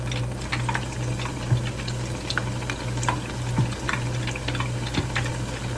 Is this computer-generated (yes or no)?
no